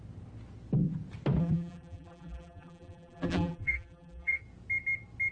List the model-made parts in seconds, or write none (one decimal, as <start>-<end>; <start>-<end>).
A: 1.4-4.4

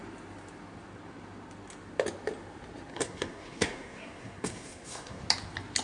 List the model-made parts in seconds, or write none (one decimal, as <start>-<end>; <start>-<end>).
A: 2.9-5.2